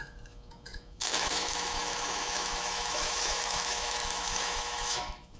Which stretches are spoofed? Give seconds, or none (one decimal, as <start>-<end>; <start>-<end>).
0.0-5.4